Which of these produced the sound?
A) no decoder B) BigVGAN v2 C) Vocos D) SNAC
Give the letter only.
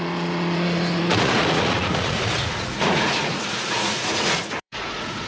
C